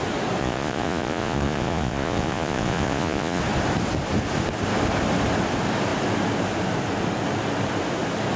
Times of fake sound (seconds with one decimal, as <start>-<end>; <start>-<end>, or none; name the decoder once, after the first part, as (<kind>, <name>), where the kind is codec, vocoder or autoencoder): 0.4-3.4 (vocoder, Vocos)